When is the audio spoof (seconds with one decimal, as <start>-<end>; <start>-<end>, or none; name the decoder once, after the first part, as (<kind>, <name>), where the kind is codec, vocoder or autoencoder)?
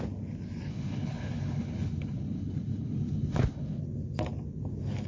0.7-3.8 (codec, HILCodec)